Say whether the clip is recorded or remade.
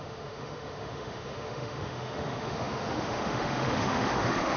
remade